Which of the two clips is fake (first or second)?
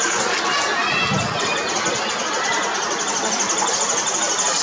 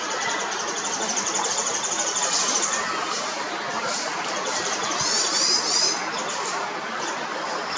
second